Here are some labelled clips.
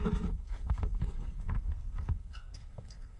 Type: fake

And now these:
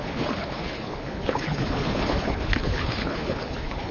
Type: fake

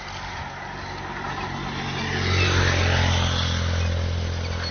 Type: real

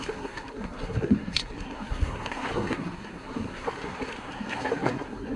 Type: fake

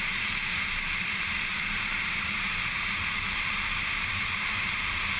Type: fake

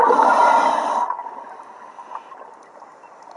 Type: real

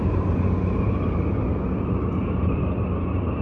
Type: real